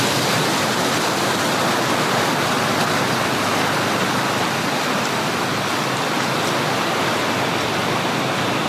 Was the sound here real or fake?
real